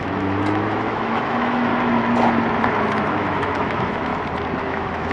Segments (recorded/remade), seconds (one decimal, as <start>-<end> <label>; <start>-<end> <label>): 0.0-1.7 remade; 1.7-3.1 recorded; 3.1-4.1 remade; 4.1-4.6 recorded; 4.6-5.1 remade